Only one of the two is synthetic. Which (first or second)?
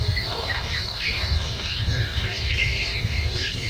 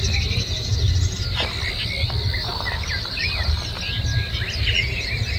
first